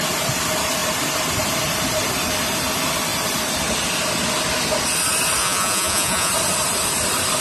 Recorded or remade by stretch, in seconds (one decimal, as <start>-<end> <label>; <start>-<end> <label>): 0.0-5.4 recorded; 5.4-6.3 remade; 6.3-7.4 recorded